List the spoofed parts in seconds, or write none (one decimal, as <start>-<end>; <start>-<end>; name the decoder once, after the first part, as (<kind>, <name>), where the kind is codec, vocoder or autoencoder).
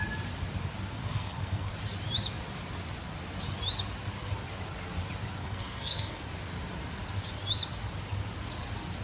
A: 1.0-1.7 (codec, SNAC); 5.4-6.2